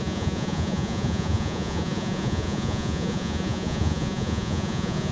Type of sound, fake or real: fake